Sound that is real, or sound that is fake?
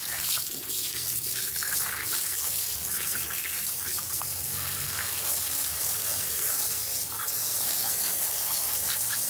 fake